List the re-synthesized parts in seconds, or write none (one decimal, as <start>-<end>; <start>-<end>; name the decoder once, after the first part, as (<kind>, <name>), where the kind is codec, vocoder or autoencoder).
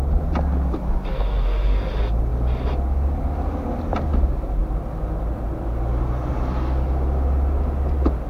1.1-1.9 (codec, SNAC)